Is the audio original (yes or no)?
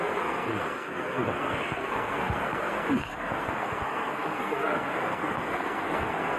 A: no